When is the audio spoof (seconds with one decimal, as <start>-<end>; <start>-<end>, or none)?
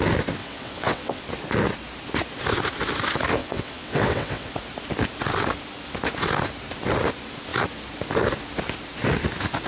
0.4-1.2; 3.4-4.5